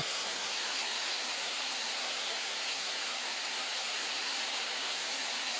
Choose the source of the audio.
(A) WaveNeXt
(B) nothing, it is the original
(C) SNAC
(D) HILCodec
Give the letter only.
C